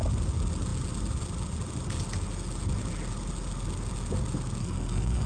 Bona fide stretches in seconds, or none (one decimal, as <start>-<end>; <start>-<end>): 0.0-4.6